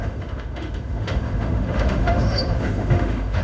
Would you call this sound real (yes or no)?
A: no